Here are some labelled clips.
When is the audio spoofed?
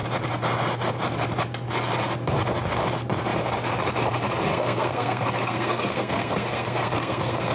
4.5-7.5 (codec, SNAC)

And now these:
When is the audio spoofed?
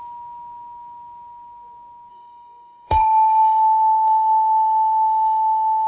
2.1-5.9 (codec, SNAC)